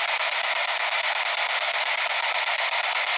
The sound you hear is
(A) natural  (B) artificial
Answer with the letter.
A